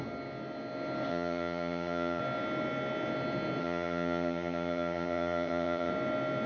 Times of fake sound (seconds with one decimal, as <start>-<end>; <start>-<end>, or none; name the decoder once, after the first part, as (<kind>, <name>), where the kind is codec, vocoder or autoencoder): 1.1-2.2 (vocoder, HiFi-GAN); 3.6-5.9